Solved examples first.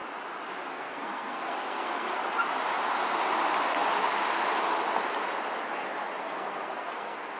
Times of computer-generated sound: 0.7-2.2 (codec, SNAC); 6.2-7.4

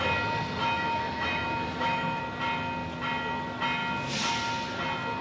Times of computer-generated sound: 0.6-2.2 (autoencoder, DAC-VAE)

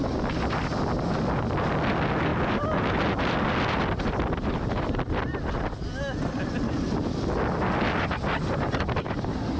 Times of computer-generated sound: none

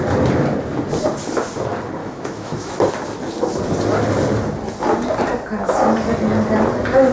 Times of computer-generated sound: 2.0-2.9 (autoencoder, DAC-VAE)

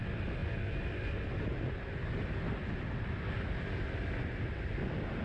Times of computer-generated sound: none

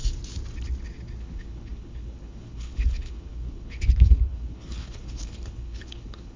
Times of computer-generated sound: 1.2-6.4 (codec, HILCodec)

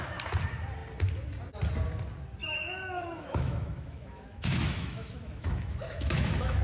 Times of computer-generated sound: 2.4-6.6 (autoencoder, DAC-VAE)

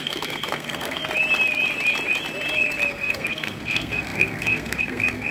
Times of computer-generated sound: 0.0-1.0 (codec, SNAC); 2.9-5.3